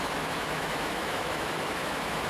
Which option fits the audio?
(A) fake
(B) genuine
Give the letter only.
A